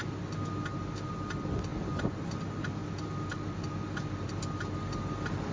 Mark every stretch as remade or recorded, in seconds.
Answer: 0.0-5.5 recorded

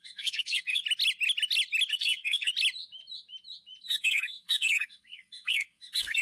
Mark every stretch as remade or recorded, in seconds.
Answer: 0.0-0.8 remade; 0.8-1.9 recorded; 1.9-2.5 remade; 2.5-3.8 recorded; 3.8-6.2 remade

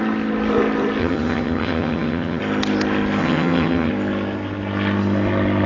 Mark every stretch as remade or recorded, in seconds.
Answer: 0.0-1.0 recorded; 1.0-2.4 remade; 2.4-3.2 recorded; 3.2-3.9 remade; 3.9-5.7 recorded